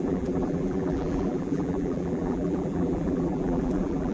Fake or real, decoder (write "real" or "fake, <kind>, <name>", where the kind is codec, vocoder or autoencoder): fake, vocoder, BigVGAN v2